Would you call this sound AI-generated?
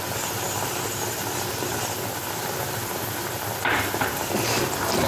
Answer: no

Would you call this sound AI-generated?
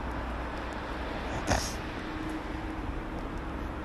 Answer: no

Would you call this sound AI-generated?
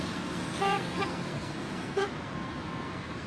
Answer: yes